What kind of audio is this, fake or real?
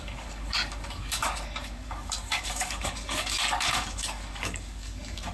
fake